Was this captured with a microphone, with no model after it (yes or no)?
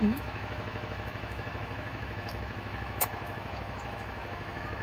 no